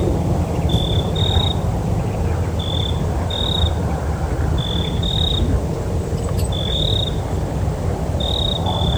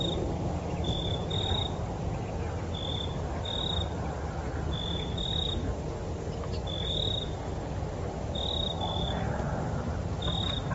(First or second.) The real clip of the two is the second